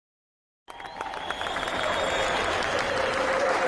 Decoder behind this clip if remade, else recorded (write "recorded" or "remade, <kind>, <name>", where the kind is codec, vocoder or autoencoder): recorded